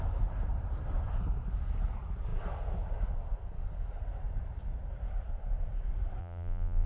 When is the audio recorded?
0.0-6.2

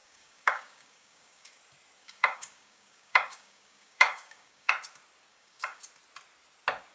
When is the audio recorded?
1.6-2.0; 4.7-5.3; 5.8-6.9